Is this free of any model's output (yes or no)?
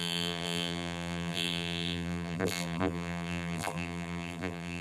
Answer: no